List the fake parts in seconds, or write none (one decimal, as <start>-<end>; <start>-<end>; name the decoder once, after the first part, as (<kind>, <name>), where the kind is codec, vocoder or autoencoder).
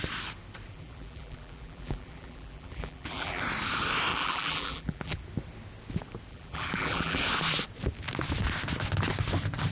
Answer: 0.7-3.4 (vocoder, BigVGAN v2); 4.1-5.2; 6.3-7.2